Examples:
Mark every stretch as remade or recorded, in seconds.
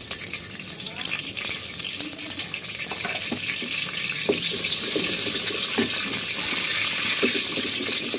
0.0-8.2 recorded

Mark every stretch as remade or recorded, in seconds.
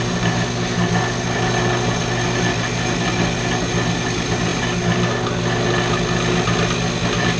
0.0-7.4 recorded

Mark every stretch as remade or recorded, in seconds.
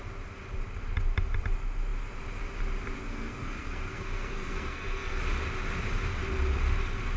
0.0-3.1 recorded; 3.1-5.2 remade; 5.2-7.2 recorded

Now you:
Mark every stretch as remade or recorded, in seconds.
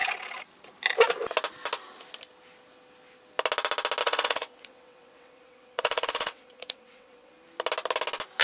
0.0-4.0 recorded; 4.0-7.3 remade; 7.3-8.4 recorded